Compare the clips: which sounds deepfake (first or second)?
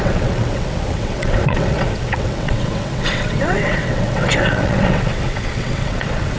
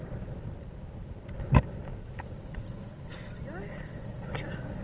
first